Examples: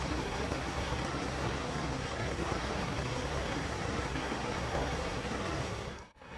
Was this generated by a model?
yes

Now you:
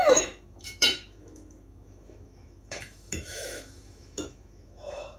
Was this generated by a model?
yes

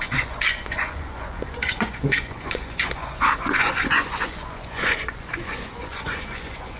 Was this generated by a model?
yes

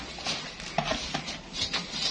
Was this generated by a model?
no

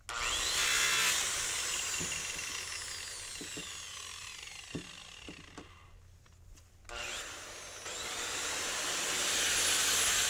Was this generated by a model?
no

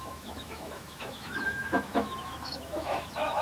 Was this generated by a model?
yes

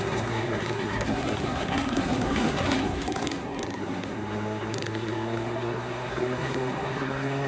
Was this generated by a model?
yes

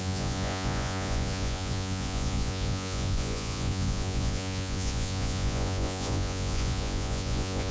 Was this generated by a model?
yes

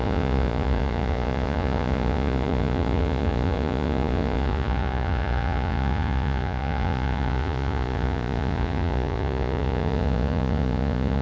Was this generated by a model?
yes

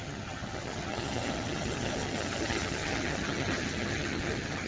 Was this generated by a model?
yes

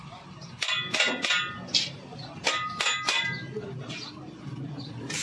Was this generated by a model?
no